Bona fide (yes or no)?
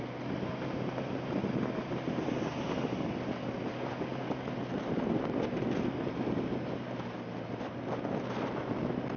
yes